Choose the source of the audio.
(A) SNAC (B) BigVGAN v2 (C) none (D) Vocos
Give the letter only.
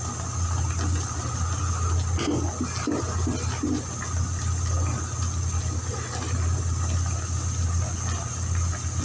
C